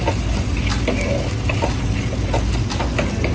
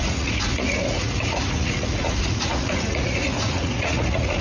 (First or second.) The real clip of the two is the first